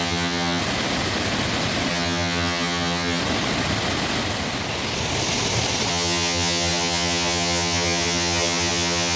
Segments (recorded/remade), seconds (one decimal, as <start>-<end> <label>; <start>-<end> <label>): 0.0-0.6 remade; 0.6-1.9 recorded; 1.9-3.2 remade; 3.2-5.9 recorded; 5.9-9.2 remade